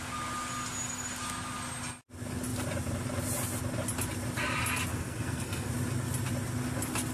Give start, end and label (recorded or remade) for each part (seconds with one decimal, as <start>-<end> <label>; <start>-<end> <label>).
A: 0.0-4.9 recorded; 4.9-5.7 remade; 5.7-7.1 recorded